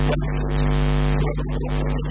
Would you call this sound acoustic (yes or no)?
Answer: yes